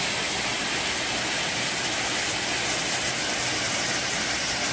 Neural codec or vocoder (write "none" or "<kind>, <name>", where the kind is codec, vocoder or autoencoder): none